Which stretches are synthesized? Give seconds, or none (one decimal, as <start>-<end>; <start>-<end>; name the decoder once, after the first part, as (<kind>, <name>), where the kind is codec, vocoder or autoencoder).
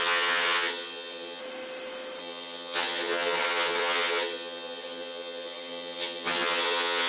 0.0-1.4 (vocoder, HiFi-GAN); 2.2-7.1